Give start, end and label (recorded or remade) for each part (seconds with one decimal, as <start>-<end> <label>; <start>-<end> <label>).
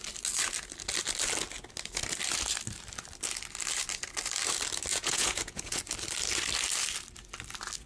0.0-4.9 recorded; 4.9-5.8 remade; 5.8-7.9 recorded